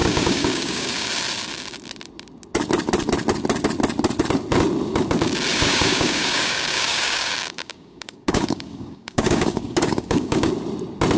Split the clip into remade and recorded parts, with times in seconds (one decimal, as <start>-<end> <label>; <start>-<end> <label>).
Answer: 0.0-1.1 remade; 1.1-5.5 recorded; 5.5-10.5 remade; 10.5-11.2 recorded